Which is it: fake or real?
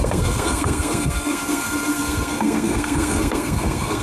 fake